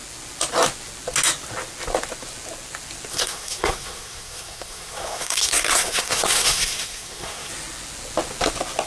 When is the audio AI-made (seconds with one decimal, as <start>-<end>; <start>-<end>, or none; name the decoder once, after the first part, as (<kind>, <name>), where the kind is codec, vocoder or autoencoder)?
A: 3.1-7.5 (codec, SNAC)